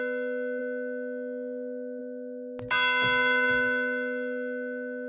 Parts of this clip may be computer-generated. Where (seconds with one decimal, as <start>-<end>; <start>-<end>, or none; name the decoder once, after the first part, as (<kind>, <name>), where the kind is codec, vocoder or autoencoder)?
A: none